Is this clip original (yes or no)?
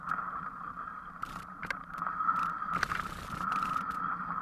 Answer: no